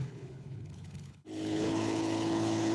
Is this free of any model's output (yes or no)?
no